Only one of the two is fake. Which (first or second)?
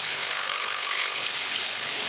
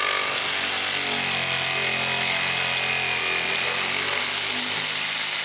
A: first